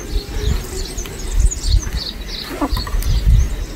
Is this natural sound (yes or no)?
yes